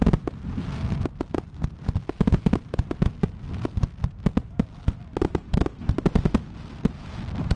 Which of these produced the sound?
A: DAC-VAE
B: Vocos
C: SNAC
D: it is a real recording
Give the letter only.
D